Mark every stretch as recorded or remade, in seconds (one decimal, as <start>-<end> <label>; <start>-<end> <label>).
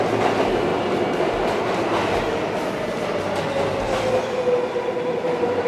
0.0-5.7 recorded